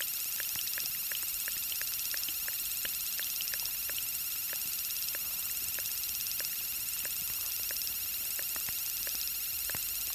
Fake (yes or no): no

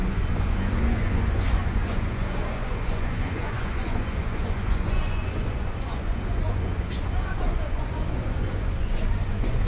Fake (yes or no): yes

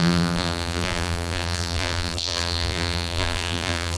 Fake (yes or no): yes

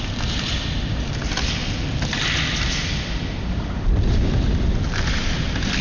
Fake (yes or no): no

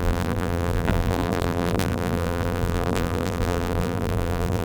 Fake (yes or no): yes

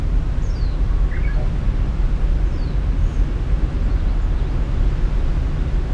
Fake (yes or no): no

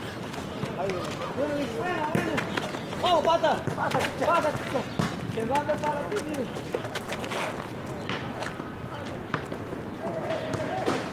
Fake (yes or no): no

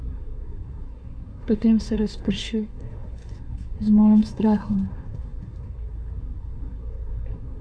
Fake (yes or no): yes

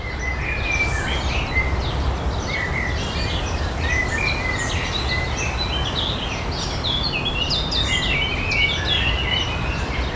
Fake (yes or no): no